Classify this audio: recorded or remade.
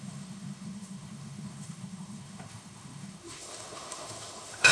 remade